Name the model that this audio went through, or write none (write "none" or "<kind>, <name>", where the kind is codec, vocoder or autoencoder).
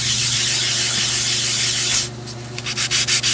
none